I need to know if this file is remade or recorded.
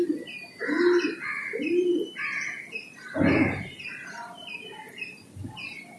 recorded